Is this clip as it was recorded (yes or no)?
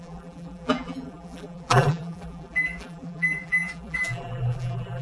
no